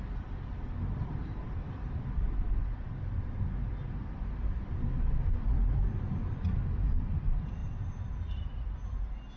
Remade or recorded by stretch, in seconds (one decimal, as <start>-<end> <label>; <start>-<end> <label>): 0.0-7.6 remade; 7.6-9.4 recorded